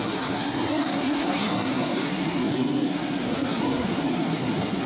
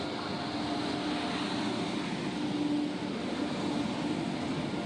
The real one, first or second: second